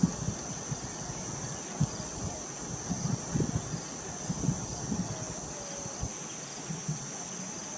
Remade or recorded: recorded